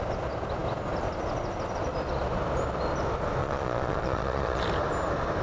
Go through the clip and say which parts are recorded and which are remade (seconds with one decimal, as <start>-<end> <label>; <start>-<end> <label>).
0.0-3.4 recorded; 3.4-4.6 remade; 4.6-5.4 recorded